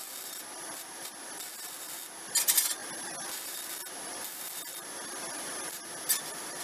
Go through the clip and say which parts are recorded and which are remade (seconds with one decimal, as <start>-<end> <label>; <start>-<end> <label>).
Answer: 0.0-6.6 recorded